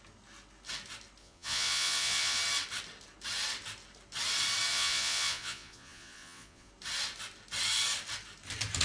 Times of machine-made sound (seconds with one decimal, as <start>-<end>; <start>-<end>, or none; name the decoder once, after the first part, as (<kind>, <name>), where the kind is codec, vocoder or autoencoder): 1.2-2.4 (vocoder, Vocos); 4.7-6.7